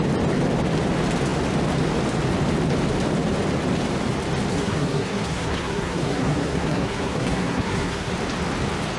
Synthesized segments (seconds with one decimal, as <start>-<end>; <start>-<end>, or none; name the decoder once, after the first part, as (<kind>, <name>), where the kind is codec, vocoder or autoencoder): 4.5-8.1 (codec, SNAC)